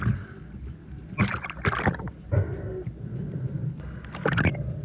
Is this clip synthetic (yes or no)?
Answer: no